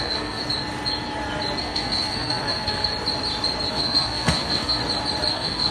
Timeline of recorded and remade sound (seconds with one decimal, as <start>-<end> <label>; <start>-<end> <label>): 0.0-0.4 remade; 0.4-1.6 recorded; 1.6-2.9 remade; 2.9-3.7 recorded; 3.7-4.8 remade; 4.8-5.3 recorded; 5.3-5.7 remade